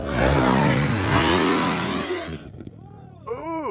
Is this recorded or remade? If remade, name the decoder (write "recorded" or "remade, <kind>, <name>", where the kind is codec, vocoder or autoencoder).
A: remade, vocoder, Vocos